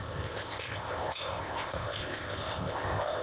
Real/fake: fake